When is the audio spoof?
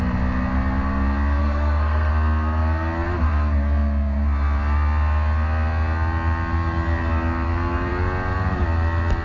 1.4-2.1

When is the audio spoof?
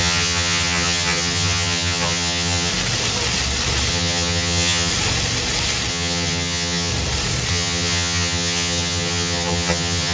0.0-2.7; 3.9-4.9; 5.9-6.9; 7.5-10.1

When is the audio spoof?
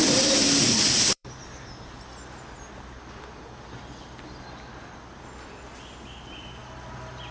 0.0-2.0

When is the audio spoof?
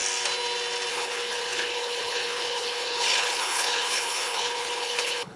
0.9-5.4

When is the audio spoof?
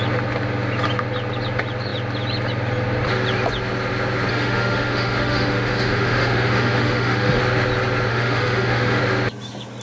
4.3-7.4; 8.1-9.0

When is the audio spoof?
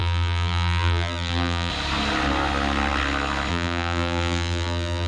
0.0-1.7; 3.5-5.1